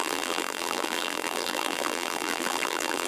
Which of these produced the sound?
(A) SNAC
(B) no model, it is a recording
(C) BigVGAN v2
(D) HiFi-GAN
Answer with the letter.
C